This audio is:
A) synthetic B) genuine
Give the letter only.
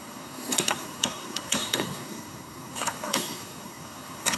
A